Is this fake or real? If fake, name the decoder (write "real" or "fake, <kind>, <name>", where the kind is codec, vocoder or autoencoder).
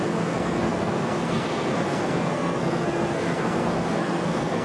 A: fake, codec, SNAC